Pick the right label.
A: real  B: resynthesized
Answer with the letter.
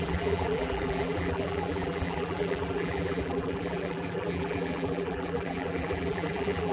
B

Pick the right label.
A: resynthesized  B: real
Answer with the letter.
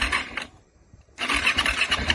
A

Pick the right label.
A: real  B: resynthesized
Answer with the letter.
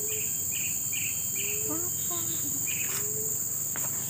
A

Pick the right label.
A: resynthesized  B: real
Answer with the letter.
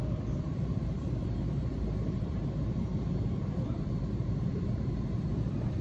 A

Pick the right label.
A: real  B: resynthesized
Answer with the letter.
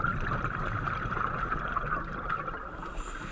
B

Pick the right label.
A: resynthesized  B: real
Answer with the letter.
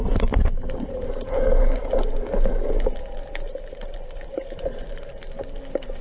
A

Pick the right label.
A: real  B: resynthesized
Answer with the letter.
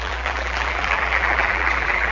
B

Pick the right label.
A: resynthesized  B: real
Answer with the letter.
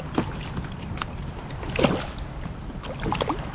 B